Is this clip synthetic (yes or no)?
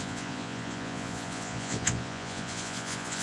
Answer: yes